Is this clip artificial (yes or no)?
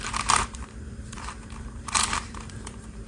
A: yes